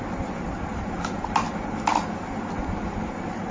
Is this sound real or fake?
real